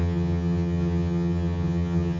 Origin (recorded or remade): remade